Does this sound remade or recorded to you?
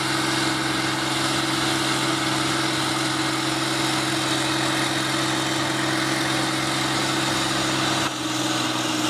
recorded